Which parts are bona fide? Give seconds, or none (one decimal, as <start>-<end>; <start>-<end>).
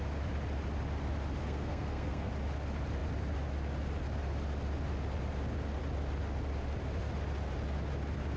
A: 0.0-1.4; 2.3-8.4